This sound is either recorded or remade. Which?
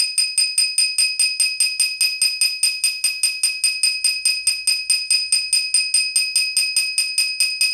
recorded